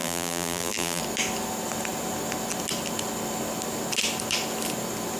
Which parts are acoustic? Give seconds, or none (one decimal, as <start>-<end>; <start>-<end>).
1.0-5.2